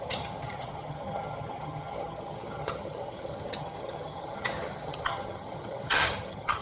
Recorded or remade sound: remade